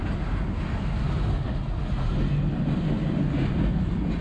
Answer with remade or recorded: recorded